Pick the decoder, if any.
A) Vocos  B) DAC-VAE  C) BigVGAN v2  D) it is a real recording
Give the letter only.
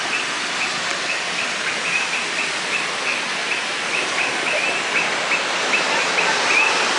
D